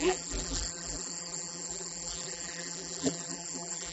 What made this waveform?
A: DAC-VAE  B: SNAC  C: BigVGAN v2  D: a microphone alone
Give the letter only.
C